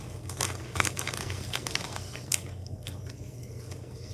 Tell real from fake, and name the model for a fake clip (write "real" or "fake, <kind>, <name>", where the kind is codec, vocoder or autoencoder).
fake, codec, SNAC